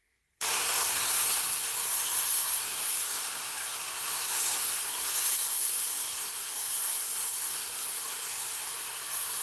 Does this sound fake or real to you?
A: fake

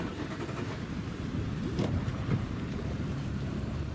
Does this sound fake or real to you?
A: fake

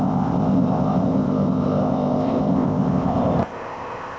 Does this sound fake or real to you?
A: fake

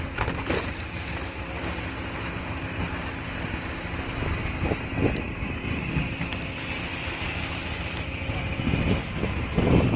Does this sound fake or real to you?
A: real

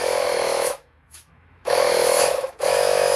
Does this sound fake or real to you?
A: fake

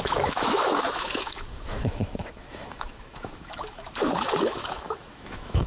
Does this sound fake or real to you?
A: fake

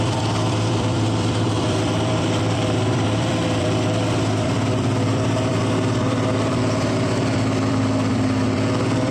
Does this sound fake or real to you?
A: fake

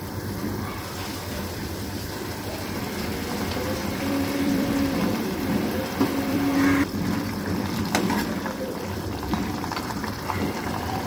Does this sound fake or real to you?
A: fake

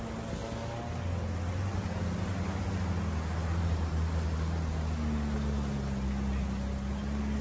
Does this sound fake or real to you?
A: real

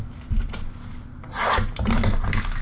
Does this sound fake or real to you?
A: real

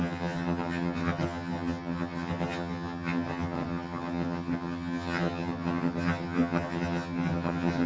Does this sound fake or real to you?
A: fake